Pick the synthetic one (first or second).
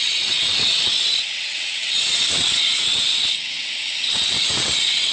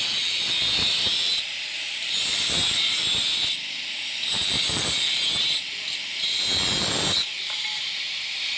first